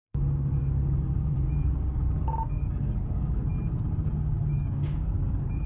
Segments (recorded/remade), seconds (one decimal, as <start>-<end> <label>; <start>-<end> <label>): 0.0-3.5 remade; 3.5-4.4 recorded; 4.4-5.7 remade